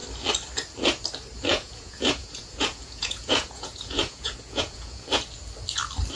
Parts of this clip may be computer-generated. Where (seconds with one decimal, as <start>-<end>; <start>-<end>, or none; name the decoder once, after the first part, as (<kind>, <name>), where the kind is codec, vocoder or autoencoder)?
1.5-5.2 (vocoder, Vocos)